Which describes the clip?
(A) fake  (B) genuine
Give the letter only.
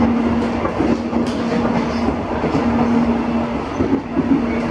B